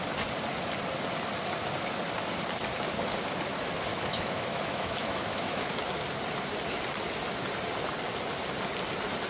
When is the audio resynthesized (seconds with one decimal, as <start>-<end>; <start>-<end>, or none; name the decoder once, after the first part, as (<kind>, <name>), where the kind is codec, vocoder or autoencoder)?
3.9-5.7 (autoencoder, DAC-VAE)